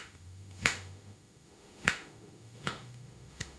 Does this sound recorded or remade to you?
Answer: remade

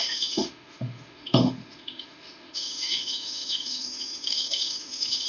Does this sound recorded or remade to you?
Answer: remade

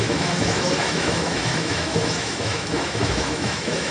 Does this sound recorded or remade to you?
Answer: remade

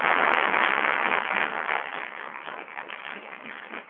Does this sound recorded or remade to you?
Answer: remade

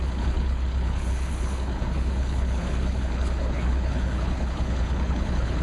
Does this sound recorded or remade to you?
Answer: remade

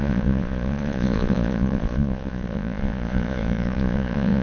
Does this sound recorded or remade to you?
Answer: remade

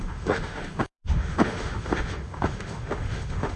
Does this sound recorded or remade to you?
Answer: remade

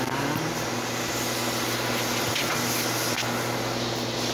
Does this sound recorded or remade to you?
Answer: recorded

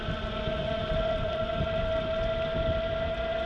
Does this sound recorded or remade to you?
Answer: recorded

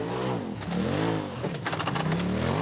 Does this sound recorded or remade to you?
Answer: recorded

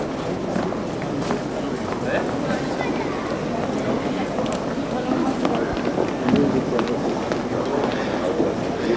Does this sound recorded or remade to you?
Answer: recorded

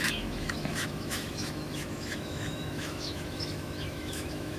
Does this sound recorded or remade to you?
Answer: remade